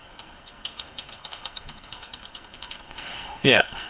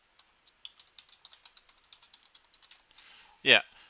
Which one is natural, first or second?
second